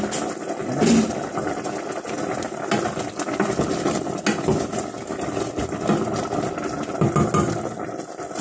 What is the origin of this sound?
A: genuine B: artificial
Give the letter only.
A